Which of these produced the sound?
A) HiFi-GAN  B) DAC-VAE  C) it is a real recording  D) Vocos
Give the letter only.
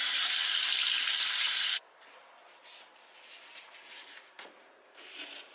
C